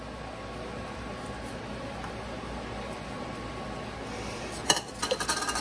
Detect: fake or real real